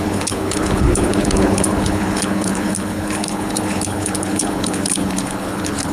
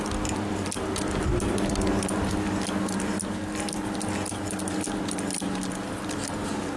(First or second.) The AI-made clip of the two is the first